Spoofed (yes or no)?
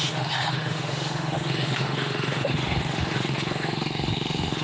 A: yes